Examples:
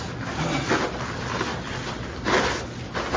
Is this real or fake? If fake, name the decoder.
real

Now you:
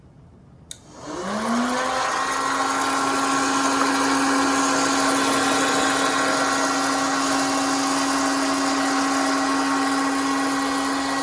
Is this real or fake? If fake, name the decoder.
real